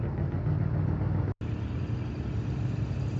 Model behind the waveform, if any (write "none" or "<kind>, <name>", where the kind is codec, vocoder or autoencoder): none